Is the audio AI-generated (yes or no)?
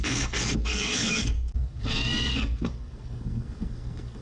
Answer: yes